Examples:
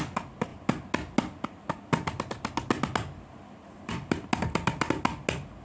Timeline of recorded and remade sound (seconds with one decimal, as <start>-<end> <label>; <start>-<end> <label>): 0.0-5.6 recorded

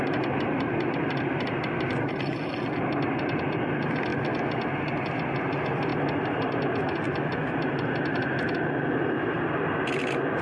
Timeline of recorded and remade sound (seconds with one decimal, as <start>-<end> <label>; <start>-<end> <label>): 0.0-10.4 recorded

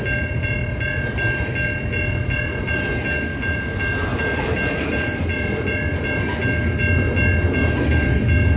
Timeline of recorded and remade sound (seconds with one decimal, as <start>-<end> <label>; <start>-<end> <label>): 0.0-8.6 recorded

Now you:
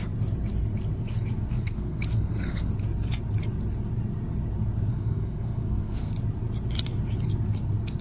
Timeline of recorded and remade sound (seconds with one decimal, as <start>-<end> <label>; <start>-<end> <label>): 0.0-1.5 recorded; 1.5-2.7 remade; 2.7-4.9 recorded; 4.9-6.1 remade; 6.1-8.0 recorded

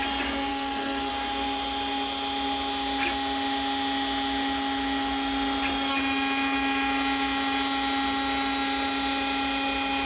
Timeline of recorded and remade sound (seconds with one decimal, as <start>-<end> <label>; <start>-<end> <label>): 0.0-0.5 recorded; 0.5-1.1 remade; 1.1-10.1 recorded

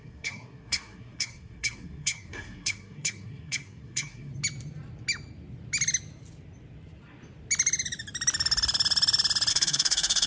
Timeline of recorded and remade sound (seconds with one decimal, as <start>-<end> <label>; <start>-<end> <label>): 0.0-4.3 remade; 4.3-9.5 recorded; 9.5-10.3 remade